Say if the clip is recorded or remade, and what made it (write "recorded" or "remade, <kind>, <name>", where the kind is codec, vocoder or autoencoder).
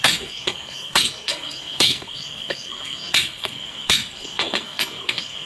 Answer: remade, codec, SNAC